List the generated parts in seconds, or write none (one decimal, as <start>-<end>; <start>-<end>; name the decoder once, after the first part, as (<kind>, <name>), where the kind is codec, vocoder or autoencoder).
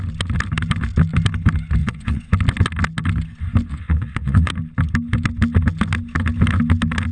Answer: 1.8-2.3 (vocoder, WaveNeXt); 3.7-4.5